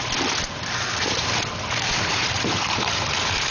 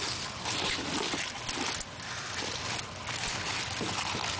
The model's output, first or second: first